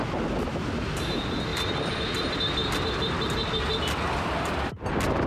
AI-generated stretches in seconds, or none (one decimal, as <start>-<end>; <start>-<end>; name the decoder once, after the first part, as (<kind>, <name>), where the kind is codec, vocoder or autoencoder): 1.5-4.7 (vocoder, BigVGAN v2)